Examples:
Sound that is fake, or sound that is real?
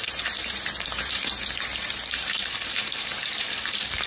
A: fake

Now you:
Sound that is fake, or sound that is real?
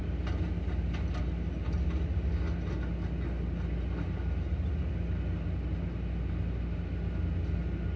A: real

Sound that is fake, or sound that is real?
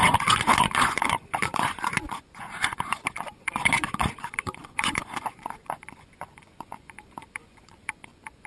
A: fake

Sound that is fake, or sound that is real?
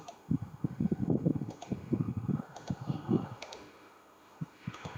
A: fake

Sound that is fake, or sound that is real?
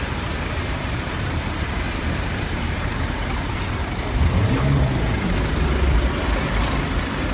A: fake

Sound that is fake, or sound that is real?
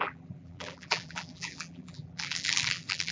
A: fake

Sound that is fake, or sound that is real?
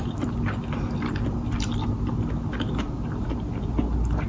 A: real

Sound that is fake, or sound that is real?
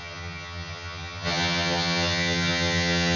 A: fake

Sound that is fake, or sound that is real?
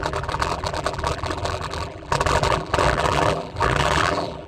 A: fake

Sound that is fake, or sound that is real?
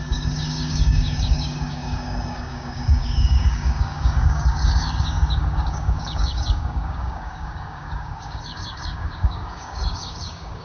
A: fake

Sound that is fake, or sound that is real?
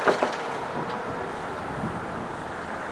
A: real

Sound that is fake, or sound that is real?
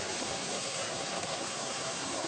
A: fake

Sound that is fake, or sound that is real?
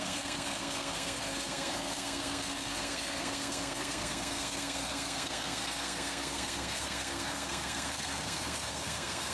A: fake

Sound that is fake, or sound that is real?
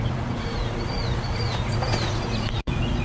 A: fake